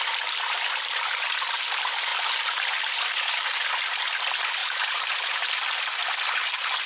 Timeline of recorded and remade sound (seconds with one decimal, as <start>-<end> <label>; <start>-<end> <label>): 0.0-2.1 recorded; 2.1-3.7 remade; 3.7-4.6 recorded; 4.6-5.5 remade; 5.5-6.9 recorded